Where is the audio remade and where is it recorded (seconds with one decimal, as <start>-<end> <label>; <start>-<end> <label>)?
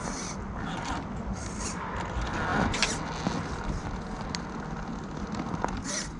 0.0-6.2 recorded